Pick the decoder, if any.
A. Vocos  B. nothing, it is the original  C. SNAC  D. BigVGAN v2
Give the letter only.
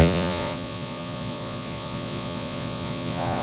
A